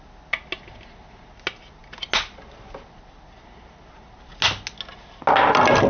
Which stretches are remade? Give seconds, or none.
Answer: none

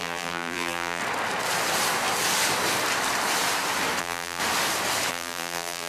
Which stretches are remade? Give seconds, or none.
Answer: 0.0-1.0; 4.0-4.4; 5.1-5.9

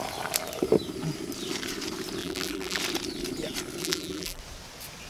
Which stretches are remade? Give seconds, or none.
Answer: 2.2-2.8; 3.8-4.4

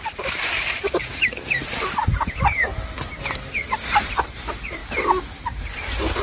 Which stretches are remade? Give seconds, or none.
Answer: 0.0-2.7; 3.4-4.8

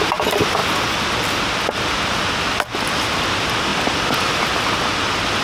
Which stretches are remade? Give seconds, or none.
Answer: none

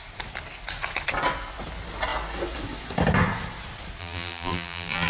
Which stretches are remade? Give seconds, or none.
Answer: 4.0-5.1

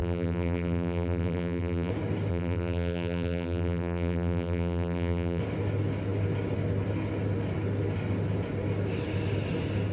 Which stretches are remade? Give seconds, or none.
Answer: 0.0-1.9; 2.3-5.4